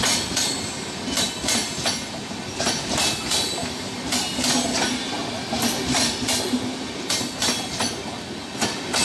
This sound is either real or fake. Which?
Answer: real